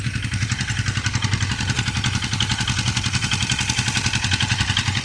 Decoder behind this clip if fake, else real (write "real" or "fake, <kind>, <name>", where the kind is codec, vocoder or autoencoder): real